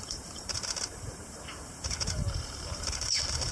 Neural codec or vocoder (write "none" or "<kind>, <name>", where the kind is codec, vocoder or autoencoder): vocoder, BigVGAN v2